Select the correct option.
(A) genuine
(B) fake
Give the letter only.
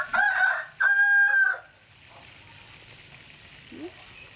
A